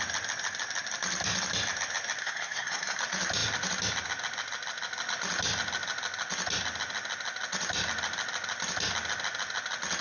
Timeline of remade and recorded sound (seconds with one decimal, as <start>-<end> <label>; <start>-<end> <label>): 0.0-2.2 recorded; 2.2-3.0 remade; 3.0-10.0 recorded